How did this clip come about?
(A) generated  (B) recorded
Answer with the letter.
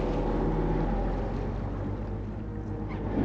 B